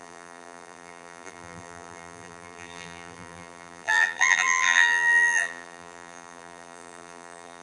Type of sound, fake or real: fake